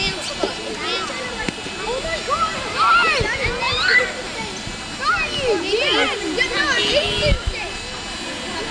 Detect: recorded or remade recorded